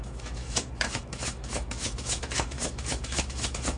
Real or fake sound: fake